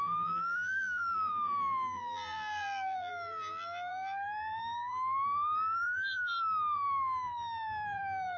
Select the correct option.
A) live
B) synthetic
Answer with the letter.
B